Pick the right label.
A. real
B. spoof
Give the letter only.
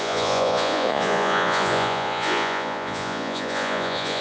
B